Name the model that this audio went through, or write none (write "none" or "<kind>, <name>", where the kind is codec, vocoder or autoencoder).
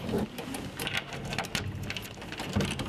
none